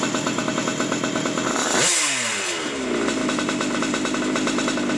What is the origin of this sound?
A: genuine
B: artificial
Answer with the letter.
A